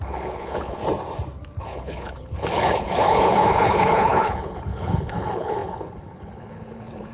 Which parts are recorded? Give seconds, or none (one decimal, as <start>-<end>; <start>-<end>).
0.8-1.6